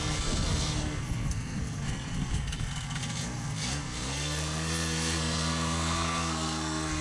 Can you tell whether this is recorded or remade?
remade